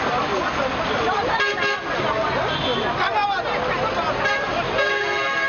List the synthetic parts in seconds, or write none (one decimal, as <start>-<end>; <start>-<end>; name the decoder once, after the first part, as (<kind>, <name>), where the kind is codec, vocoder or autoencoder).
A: none